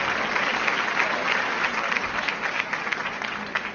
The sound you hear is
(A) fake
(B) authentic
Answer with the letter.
B